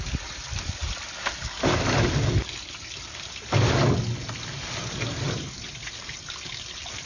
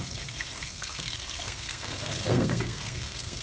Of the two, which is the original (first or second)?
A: first